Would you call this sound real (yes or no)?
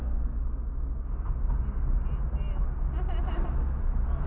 yes